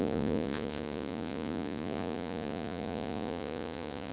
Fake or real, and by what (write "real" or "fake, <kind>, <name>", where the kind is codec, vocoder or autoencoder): fake, vocoder, Vocos